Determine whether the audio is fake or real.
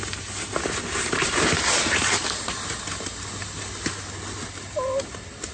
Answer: real